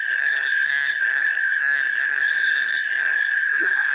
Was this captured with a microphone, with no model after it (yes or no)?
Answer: no